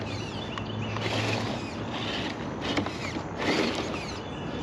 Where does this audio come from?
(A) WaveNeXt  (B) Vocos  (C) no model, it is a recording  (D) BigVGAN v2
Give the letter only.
C